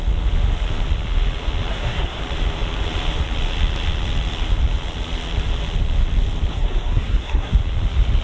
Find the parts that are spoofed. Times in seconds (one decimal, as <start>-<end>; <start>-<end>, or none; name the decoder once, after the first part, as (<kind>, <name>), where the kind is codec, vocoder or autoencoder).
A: 1.7-2.2 (codec, SNAC); 6.5-7.5